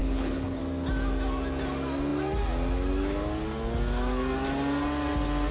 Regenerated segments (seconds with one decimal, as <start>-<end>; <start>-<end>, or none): 0.0-0.6